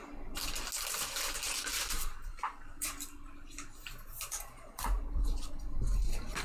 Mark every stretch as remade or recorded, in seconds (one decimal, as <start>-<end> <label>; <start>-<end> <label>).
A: 0.0-1.7 recorded; 1.7-5.5 remade; 5.5-6.4 recorded